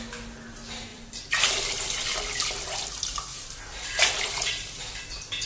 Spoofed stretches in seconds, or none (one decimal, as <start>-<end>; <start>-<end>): 0.9-2.8; 3.3-4.5